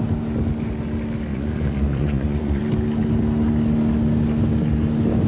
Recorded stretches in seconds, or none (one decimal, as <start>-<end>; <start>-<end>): 0.0-1.3; 2.6-5.3